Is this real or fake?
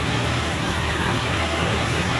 fake